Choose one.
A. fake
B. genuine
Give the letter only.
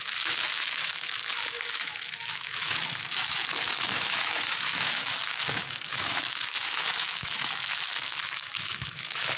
A